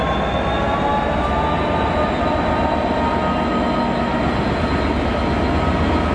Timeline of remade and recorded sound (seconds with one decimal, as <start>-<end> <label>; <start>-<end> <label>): 0.0-6.1 recorded